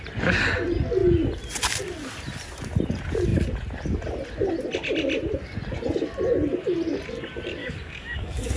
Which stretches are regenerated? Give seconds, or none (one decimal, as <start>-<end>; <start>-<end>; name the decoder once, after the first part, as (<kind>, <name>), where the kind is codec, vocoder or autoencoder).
7.6-8.6 (codec, DAC)